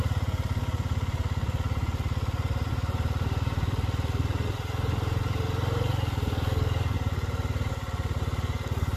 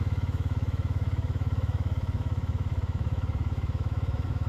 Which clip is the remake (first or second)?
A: second